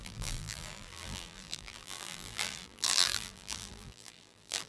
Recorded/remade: remade